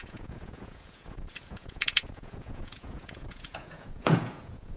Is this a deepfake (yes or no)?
yes